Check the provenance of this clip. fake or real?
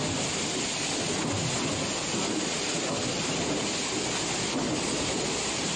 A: real